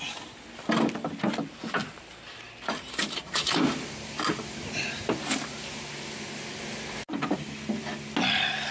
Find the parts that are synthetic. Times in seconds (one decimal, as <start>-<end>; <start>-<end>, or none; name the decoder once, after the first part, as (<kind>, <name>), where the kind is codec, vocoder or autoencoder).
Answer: 1.8-3.9 (vocoder, BigVGAN v2)